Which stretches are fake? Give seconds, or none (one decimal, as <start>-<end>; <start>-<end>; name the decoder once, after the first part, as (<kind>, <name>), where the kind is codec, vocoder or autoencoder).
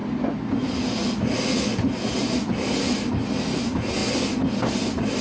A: none